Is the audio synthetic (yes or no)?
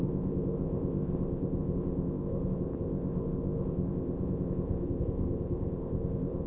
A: yes